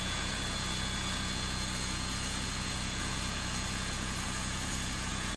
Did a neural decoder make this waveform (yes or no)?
yes